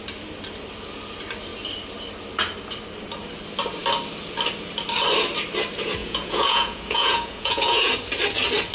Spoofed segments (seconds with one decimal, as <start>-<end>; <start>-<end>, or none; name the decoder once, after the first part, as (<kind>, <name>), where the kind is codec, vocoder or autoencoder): 6.0-7.9 (vocoder, Vocos)